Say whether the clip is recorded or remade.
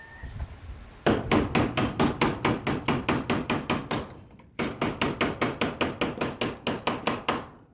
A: recorded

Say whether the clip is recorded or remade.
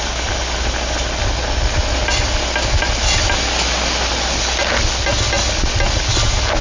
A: recorded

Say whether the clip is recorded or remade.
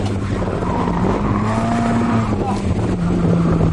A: recorded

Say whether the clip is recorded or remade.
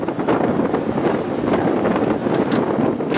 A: recorded